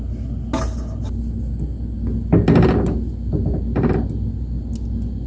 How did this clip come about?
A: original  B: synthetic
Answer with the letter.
A